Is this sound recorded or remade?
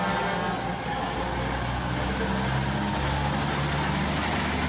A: recorded